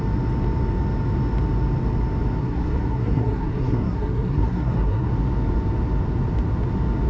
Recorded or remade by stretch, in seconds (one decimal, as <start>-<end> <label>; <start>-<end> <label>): 0.0-2.4 recorded; 2.4-5.1 remade; 5.1-7.1 recorded